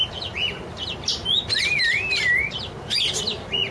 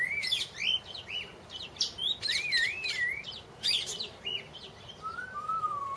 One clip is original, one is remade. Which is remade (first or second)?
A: second